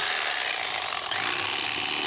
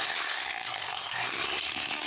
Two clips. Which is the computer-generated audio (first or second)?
second